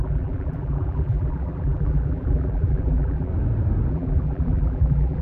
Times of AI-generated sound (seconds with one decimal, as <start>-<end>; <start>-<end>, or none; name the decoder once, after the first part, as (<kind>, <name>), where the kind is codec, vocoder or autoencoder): 0.0-3.3 (vocoder, BigVGAN v2); 3.9-5.2